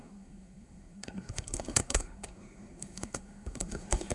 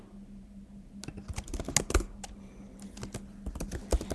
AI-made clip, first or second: first